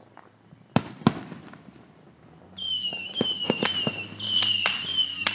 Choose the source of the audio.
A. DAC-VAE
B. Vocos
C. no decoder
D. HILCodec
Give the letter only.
C